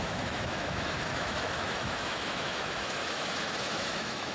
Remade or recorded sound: remade